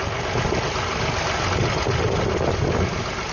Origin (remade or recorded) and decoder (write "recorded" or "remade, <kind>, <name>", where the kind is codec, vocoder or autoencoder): recorded